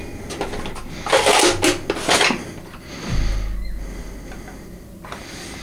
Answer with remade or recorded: recorded